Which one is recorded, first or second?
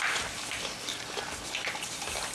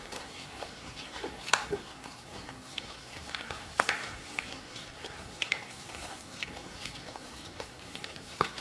first